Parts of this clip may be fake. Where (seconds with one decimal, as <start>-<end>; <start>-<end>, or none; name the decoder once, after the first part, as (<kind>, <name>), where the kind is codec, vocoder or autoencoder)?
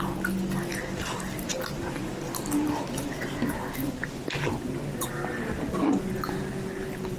none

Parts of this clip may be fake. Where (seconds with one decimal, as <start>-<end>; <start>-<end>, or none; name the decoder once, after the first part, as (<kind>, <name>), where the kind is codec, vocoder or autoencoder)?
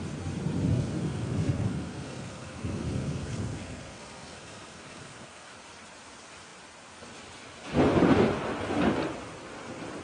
0.7-5.5 (codec, SNAC)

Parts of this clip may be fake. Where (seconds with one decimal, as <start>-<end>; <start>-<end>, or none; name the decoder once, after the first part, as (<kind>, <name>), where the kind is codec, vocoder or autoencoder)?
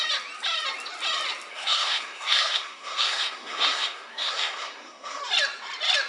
1.5-5.2 (codec, SNAC)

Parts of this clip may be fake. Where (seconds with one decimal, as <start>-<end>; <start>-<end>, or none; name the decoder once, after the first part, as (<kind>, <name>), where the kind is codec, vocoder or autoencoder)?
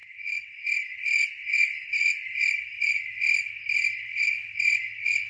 none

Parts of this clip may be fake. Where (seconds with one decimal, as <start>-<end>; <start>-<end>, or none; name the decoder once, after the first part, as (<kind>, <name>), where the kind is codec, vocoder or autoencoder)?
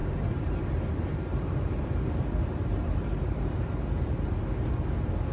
0.0-0.6 (vocoder, BigVGAN v2); 1.3-3.7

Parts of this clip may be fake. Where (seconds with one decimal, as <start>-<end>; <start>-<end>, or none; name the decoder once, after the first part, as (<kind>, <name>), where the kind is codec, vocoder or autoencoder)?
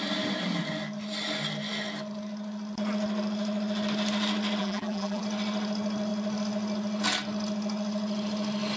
4.6-5.2 (vocoder, BigVGAN v2)